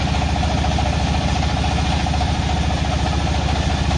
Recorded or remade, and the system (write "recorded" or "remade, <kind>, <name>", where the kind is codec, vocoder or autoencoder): recorded